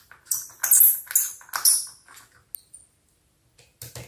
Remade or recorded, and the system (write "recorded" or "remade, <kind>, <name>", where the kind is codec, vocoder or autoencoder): recorded